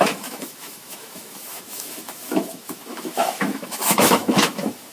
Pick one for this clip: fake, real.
fake